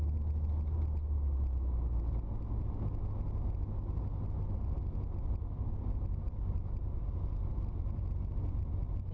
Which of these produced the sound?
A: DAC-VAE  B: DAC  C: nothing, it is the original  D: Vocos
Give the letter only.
C